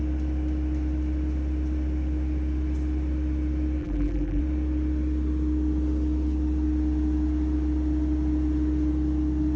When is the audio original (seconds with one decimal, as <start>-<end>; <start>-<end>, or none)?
0.0-3.8; 4.4-9.6